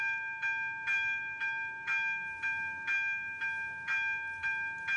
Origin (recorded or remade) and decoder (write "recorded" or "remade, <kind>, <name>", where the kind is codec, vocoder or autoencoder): recorded